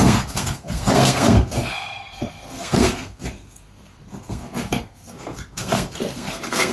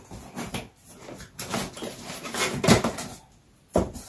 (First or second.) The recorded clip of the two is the second